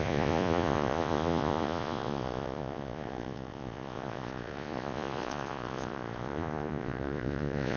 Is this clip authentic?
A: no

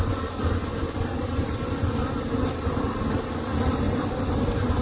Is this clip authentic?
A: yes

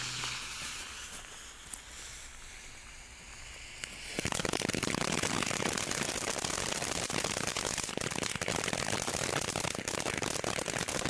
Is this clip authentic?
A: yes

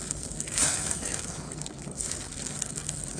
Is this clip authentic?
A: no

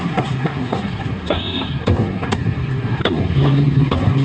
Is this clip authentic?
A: no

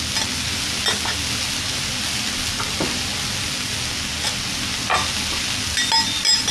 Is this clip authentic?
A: yes